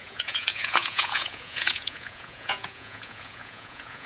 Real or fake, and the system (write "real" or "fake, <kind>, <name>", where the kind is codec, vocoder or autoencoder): fake, vocoder, Vocos